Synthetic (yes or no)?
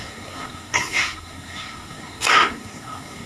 yes